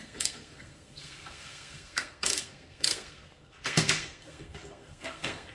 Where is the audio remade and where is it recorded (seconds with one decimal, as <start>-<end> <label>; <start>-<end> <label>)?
0.0-5.5 remade